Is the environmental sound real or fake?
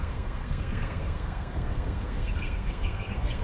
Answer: fake